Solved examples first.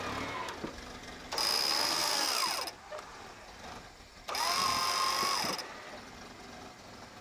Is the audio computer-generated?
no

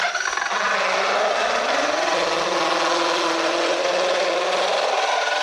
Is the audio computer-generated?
no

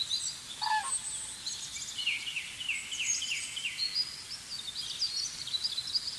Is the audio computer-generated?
no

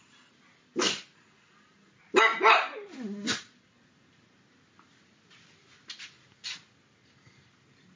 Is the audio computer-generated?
no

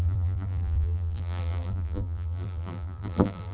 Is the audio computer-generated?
yes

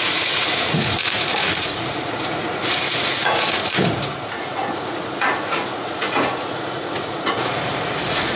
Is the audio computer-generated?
yes